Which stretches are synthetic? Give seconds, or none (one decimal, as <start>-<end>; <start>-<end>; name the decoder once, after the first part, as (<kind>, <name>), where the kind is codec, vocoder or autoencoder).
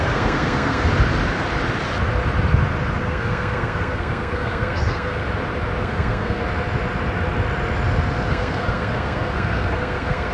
0.0-0.9 (codec, SNAC); 3.0-5.2; 5.8-6.4; 8.3-10.3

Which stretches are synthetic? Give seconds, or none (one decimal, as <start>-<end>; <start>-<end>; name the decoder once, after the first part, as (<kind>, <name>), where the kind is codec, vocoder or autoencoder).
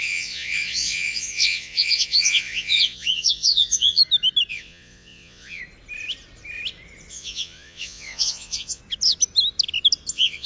0.0-4.0 (vocoder, Vocos); 4.5-5.6; 7.1-8.8; 10.1-10.5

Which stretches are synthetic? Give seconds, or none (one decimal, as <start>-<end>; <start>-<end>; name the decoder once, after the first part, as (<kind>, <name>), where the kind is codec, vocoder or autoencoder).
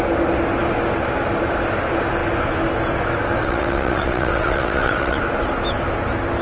3.4-5.2 (vocoder, WaveNeXt)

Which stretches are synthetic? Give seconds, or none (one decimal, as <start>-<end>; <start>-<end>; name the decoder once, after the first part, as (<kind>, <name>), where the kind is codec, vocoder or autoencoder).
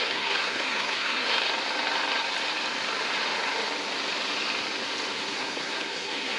0.0-1.4 (codec, SNAC); 5.2-6.4